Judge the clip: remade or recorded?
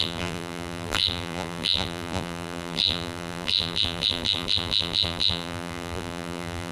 remade